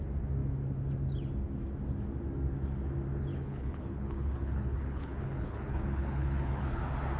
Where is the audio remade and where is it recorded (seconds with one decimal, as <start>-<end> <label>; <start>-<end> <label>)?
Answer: 0.0-3.3 recorded; 3.3-6.8 remade; 6.8-7.2 recorded